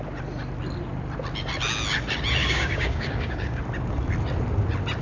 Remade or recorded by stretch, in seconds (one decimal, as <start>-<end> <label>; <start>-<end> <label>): 0.0-2.4 recorded; 2.4-3.6 remade; 3.6-5.0 recorded